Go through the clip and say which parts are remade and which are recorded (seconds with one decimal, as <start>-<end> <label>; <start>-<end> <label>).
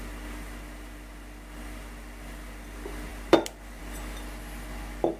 0.0-5.2 recorded